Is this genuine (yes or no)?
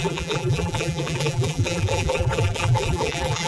no